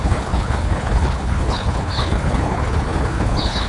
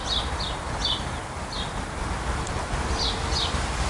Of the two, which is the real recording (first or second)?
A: second